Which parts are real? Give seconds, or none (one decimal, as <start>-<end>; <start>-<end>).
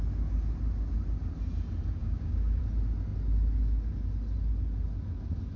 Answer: 0.0-2.0; 2.6-5.6